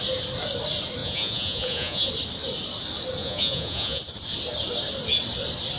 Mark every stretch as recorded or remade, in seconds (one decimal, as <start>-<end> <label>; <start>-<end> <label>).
0.0-1.0 recorded; 1.0-2.1 remade; 2.1-3.2 recorded; 3.2-4.0 remade; 4.0-5.8 recorded